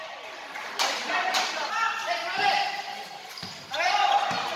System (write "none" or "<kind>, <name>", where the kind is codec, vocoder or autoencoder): none